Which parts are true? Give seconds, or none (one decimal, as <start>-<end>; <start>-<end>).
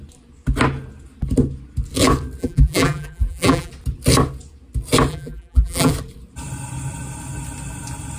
0.0-2.4; 3.7-5.1; 5.9-8.2